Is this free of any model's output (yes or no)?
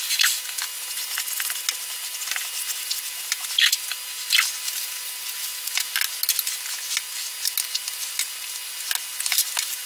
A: yes